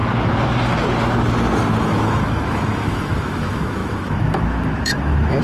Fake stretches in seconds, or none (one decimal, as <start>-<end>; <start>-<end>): 1.8-5.4